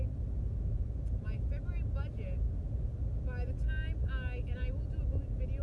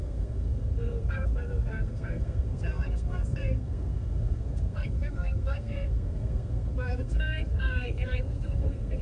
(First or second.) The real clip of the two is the first